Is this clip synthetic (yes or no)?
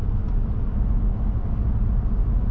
no